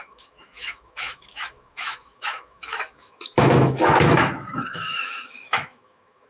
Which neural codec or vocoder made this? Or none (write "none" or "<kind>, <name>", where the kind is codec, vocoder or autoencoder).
autoencoder, DAC-VAE